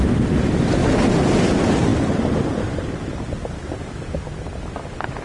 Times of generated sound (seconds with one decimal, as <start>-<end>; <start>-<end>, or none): none